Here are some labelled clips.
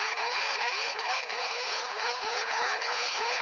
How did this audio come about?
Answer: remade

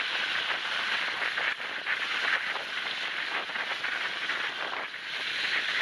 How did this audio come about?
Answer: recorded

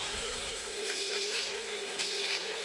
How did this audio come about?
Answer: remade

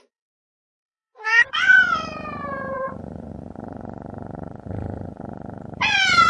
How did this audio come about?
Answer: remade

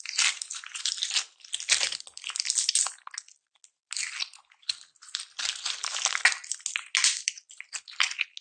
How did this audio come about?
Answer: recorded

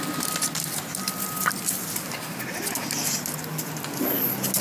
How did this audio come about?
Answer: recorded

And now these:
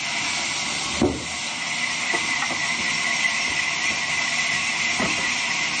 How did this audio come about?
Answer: recorded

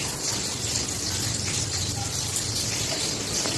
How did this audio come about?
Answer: recorded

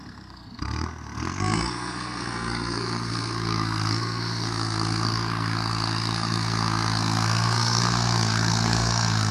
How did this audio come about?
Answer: remade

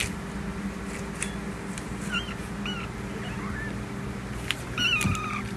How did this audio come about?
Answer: recorded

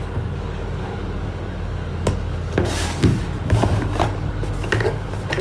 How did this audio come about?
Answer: remade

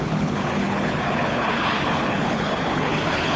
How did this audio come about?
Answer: remade